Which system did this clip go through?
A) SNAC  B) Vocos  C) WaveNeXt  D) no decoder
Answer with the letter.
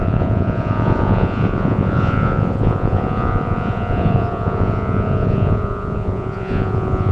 B